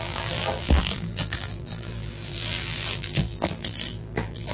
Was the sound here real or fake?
fake